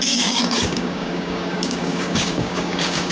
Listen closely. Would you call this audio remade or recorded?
remade